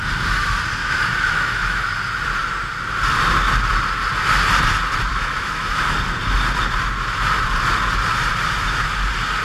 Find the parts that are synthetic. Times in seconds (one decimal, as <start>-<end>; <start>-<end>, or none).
0.8-1.8; 5.1-5.8